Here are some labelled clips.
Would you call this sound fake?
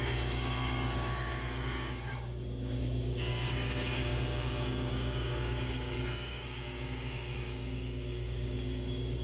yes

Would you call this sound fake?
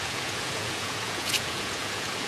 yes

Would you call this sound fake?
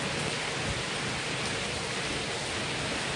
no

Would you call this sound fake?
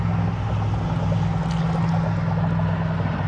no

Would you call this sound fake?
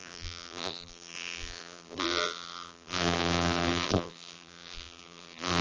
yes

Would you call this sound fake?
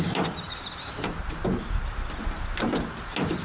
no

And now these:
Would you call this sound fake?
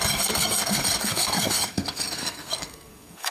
yes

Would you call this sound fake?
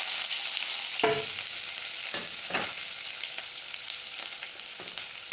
no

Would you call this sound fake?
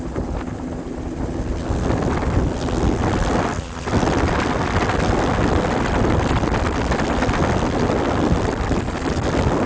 no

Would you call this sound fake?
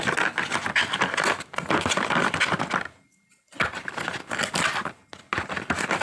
no